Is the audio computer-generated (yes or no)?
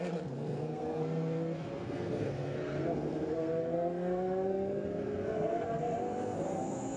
yes